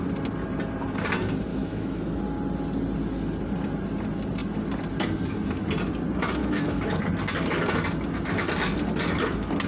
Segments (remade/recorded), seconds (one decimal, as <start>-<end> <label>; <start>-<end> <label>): 0.0-1.5 recorded; 1.5-2.2 remade; 2.2-6.4 recorded; 6.4-7.0 remade; 7.0-9.7 recorded